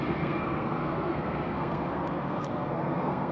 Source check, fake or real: fake